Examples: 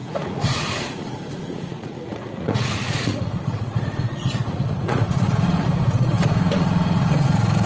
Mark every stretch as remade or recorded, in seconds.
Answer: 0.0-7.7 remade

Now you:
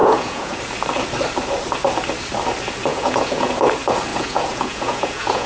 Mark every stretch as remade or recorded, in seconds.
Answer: 0.0-0.6 remade; 0.6-2.9 recorded; 2.9-3.5 remade; 3.5-4.1 recorded; 4.1-5.5 remade

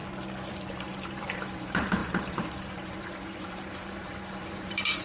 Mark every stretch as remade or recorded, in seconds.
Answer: 0.0-0.7 recorded; 0.7-5.0 remade

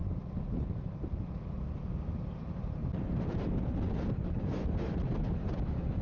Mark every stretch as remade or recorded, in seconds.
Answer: 0.0-2.4 recorded; 2.4-2.8 remade; 2.8-4.4 recorded; 4.4-6.0 remade